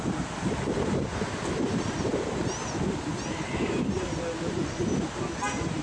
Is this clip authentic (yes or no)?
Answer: yes